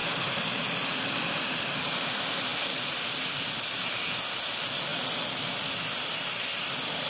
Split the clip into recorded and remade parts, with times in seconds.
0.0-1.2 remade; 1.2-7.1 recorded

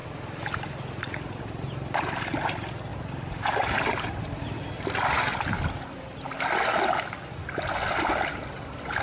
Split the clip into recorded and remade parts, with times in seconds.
0.0-9.0 recorded

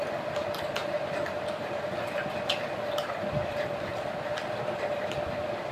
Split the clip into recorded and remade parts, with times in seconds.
0.0-5.7 recorded